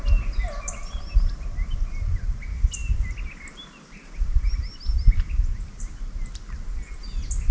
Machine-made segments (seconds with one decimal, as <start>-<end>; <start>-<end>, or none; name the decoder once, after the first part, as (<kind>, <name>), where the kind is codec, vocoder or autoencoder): none